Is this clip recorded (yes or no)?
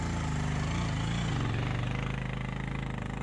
yes